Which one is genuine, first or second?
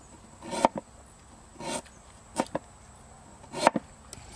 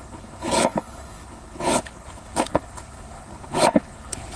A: first